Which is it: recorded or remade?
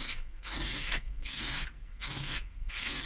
remade